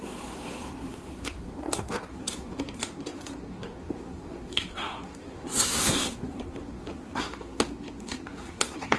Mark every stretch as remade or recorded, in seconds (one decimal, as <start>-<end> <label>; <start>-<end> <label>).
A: 0.0-9.0 remade